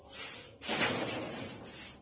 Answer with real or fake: real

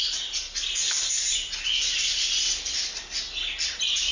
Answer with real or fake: real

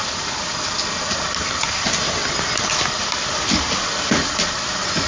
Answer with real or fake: real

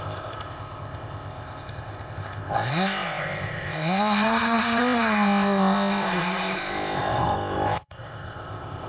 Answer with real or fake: fake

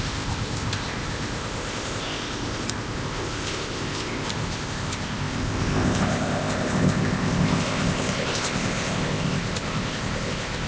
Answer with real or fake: fake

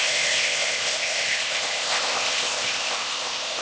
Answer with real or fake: fake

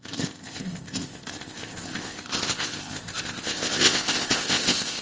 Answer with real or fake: fake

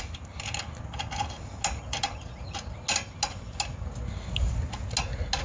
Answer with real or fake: real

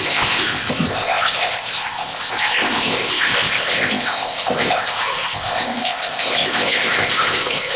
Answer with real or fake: fake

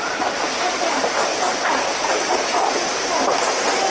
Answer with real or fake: real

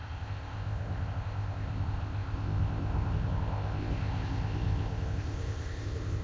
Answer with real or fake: fake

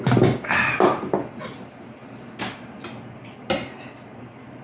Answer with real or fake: real